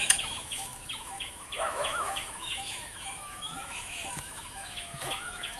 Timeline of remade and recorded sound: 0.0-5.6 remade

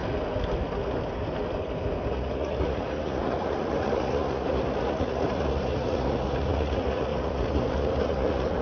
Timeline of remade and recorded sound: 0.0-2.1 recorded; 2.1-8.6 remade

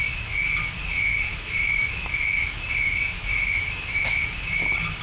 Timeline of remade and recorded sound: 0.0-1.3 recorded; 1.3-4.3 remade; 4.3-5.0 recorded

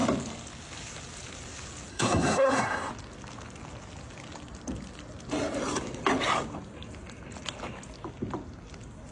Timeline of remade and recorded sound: 0.0-1.9 recorded; 1.9-2.9 remade; 2.9-9.1 recorded

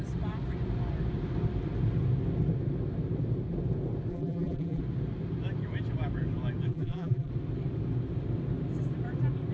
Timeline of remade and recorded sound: 0.0-4.1 recorded; 4.1-4.8 remade; 4.8-6.7 recorded; 6.7-7.3 remade; 7.3-9.5 recorded

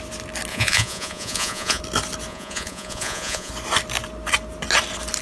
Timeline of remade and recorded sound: 0.0-0.5 recorded; 0.5-1.8 remade; 1.8-2.3 recorded; 2.3-3.5 remade; 3.5-5.2 recorded